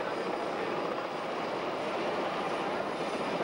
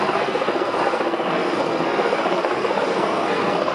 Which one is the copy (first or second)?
second